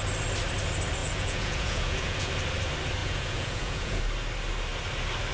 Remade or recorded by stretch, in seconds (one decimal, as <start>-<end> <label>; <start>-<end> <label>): 0.0-1.0 recorded; 1.0-2.3 remade; 2.3-3.0 recorded; 3.0-4.0 remade; 4.0-5.3 recorded